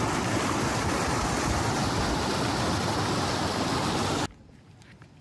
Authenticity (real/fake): real